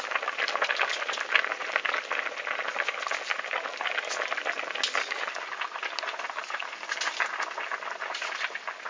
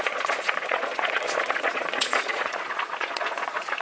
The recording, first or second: first